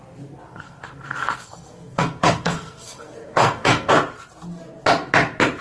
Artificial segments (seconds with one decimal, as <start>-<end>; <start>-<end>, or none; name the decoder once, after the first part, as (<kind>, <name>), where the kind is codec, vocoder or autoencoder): 0.5-3.9 (codec, SNAC)